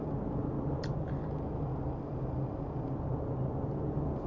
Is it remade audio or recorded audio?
recorded